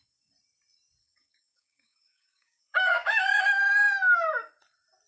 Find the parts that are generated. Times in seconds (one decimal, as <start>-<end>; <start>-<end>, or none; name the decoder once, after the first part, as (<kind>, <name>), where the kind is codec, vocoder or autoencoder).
1.0-3.4 (codec, DAC)